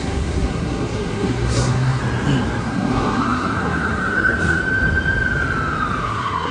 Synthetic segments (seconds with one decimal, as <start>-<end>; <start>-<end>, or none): 0.0-2.0; 2.6-4.6; 6.0-6.5